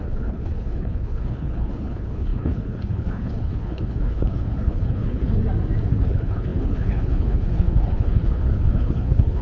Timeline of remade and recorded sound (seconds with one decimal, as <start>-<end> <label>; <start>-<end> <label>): 0.0-5.4 remade; 5.4-5.9 recorded; 5.9-9.4 remade